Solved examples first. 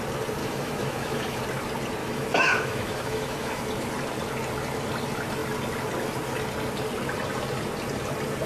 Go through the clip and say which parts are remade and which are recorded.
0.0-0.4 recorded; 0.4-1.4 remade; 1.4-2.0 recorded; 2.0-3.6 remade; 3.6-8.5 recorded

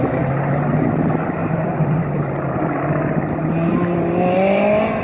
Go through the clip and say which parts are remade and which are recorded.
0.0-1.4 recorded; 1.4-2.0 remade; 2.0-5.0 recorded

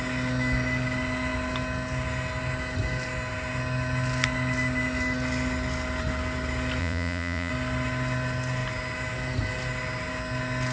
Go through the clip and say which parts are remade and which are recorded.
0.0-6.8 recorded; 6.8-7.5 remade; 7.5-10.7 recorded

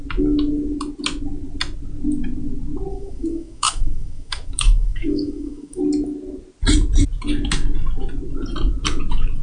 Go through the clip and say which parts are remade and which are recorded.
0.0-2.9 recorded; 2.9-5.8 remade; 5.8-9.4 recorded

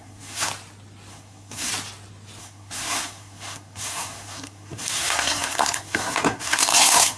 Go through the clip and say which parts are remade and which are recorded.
0.0-0.5 remade; 0.5-1.1 recorded; 1.1-1.7 remade; 1.7-2.4 recorded; 2.4-7.2 remade

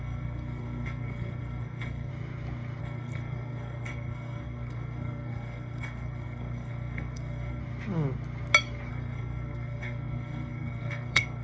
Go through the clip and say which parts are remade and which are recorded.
0.0-2.1 remade; 2.1-2.8 recorded; 2.8-7.6 remade; 7.6-8.9 recorded; 8.9-11.4 remade